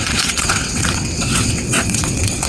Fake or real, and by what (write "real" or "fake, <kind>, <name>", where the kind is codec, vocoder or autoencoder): fake, vocoder, WaveNeXt